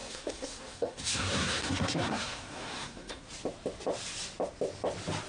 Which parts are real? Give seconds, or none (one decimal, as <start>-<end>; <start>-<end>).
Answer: 3.2-5.3